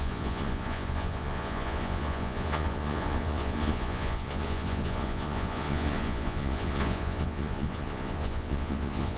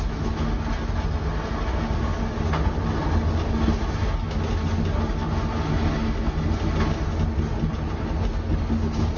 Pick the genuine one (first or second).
second